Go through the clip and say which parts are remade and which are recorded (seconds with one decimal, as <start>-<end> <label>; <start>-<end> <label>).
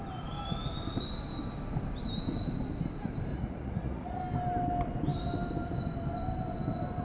0.0-3.3 recorded; 3.3-4.2 remade; 4.2-7.0 recorded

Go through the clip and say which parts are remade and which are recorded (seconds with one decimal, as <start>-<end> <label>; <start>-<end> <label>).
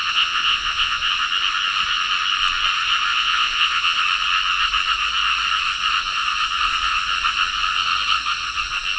0.0-1.1 remade; 1.1-3.1 recorded; 3.1-4.0 remade; 4.0-9.0 recorded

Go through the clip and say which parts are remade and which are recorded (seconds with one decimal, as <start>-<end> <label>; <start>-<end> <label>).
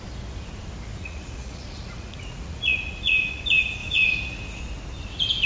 0.0-0.9 recorded; 0.9-3.4 remade; 3.4-3.8 recorded; 3.8-4.6 remade; 4.6-5.5 recorded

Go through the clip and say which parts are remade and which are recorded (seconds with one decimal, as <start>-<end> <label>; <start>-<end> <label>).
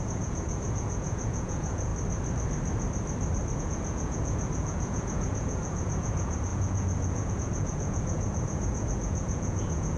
0.0-1.9 remade; 1.9-3.6 recorded; 3.6-10.0 remade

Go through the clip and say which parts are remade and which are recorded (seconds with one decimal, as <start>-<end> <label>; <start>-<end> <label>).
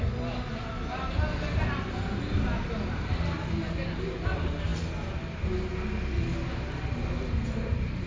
0.0-8.1 recorded